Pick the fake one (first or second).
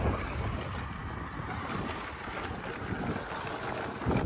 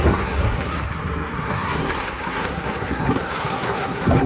second